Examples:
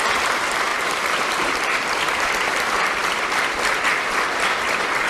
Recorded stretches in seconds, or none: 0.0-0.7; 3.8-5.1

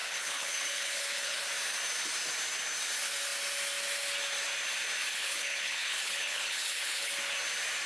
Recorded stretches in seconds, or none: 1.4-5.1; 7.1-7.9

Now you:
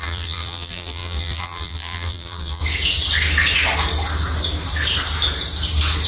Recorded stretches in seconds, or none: 2.6-6.1